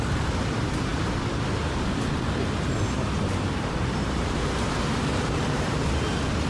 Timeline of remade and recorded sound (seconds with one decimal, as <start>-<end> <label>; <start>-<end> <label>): 0.0-4.0 recorded; 4.0-6.1 remade; 6.1-6.5 recorded